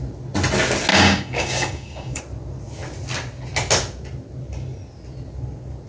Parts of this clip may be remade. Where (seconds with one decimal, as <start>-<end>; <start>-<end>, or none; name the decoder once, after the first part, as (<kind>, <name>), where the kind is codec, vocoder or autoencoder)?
0.9-2.2 (codec, DAC)